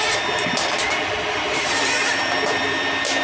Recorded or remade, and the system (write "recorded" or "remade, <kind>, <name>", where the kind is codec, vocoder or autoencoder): remade, vocoder, BigVGAN v2